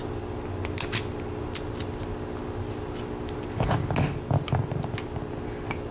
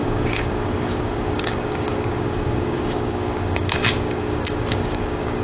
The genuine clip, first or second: first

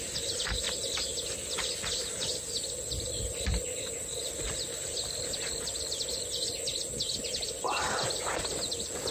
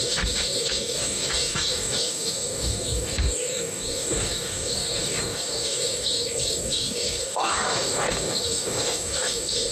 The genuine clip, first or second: first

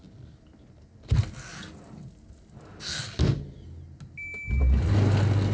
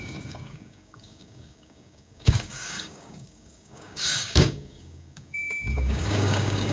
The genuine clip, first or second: first